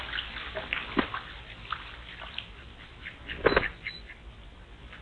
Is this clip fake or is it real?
real